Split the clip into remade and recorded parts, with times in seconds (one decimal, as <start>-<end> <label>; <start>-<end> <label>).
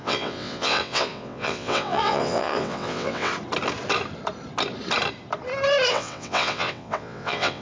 0.0-3.3 remade; 3.3-5.9 recorded; 5.9-7.6 remade